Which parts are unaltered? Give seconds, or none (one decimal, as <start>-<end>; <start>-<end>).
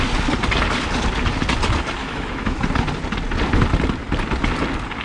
0.0-2.0; 2.6-5.0